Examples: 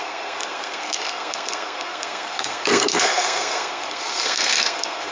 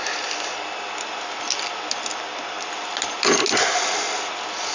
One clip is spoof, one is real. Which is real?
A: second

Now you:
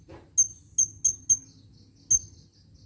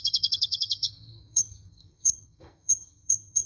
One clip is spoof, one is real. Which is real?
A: first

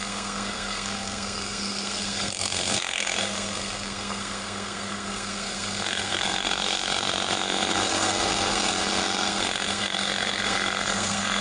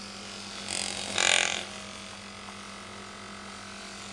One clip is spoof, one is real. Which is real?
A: second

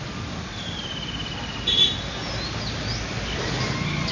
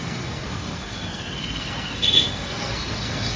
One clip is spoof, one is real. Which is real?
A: first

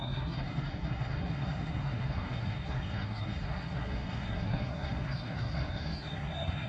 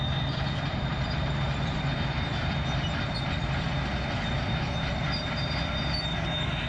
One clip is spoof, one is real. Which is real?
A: second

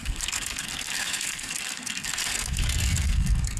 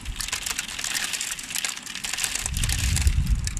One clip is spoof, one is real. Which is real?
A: second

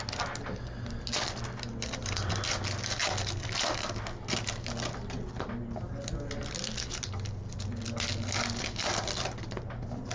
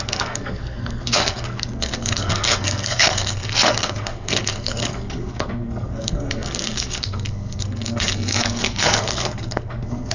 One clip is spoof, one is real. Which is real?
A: first